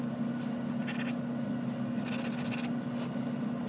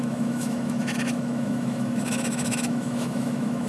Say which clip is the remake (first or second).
second